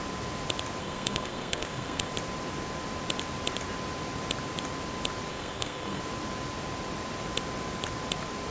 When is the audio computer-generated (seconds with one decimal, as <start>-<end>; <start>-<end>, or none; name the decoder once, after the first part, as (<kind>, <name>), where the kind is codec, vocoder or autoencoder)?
0.8-2.1 (codec, SNAC); 5.3-6.0

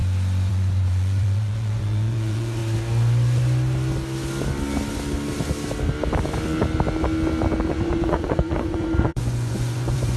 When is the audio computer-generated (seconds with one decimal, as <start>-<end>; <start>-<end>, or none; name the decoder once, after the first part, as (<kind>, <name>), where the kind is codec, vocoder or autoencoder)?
0.5-2.6 (vocoder, Vocos); 7.7-10.2

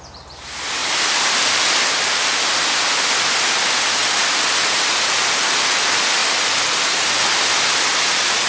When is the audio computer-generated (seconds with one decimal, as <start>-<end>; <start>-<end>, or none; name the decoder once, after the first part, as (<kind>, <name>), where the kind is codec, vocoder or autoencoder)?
none

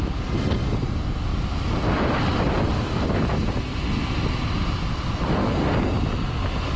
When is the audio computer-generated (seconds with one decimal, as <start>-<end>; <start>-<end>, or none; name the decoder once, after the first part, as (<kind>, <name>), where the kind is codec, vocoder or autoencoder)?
1.3-3.0 (vocoder, BigVGAN v2)

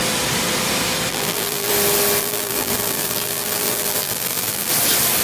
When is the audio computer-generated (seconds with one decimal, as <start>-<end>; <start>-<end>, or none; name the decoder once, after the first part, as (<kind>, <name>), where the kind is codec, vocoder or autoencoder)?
1.1-1.7 (vocoder, BigVGAN v2); 2.2-4.7

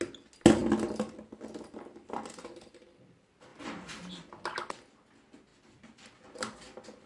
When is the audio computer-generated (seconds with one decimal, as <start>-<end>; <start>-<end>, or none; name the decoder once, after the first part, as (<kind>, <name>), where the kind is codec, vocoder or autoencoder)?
0.6-1.4 (vocoder, BigVGAN v2); 5.5-7.1

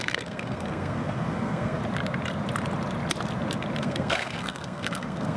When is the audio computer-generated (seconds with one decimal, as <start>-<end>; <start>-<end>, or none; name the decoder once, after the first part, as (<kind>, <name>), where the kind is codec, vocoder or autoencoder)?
0.0-1.8 (codec, SNAC); 3.8-5.4